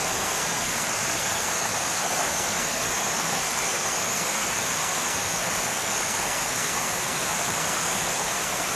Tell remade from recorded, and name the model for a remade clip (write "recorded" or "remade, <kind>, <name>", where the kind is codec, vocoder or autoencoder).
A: remade, codec, SNAC